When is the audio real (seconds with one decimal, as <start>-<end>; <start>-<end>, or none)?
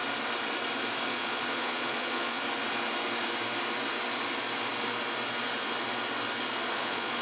0.0-1.1; 2.4-6.7